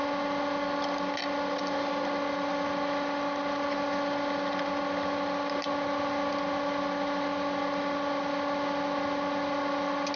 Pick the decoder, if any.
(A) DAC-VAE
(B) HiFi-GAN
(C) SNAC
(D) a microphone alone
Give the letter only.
D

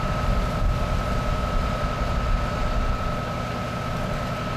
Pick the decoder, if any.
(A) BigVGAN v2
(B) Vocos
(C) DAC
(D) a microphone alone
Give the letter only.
D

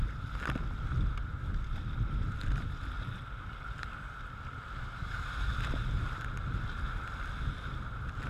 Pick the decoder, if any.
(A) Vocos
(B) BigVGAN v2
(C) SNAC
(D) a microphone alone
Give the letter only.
D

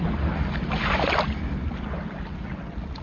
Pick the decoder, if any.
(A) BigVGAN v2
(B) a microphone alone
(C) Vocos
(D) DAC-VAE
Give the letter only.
B